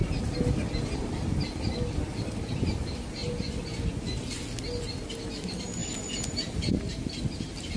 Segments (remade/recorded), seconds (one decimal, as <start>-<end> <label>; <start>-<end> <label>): 0.0-7.8 recorded